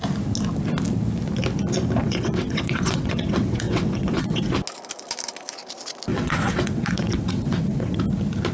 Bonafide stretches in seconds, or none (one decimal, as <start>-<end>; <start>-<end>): 0.0-2.0; 4.5-6.1; 8.0-8.5